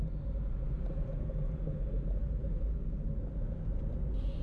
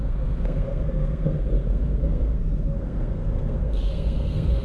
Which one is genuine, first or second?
first